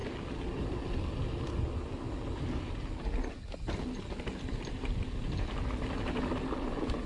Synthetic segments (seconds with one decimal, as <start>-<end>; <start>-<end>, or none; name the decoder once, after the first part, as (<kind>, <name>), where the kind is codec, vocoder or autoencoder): none

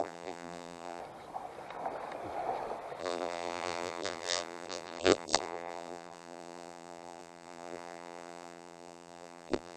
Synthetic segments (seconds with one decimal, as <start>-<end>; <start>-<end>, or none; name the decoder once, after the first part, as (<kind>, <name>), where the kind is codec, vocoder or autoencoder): 0.0-1.0 (vocoder, BigVGAN v2); 3.0-9.8